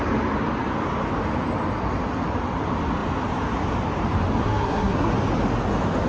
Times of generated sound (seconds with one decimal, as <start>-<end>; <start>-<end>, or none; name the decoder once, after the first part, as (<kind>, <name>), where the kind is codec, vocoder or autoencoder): 4.4-5.1 (codec, SNAC)